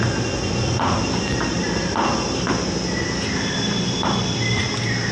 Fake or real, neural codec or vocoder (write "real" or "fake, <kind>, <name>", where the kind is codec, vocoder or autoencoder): real